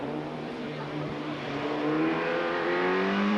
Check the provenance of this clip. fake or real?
fake